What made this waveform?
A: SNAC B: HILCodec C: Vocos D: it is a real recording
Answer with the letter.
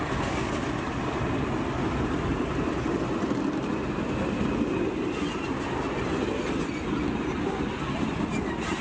D